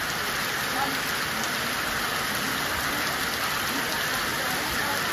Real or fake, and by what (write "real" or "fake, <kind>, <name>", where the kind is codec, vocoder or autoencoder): real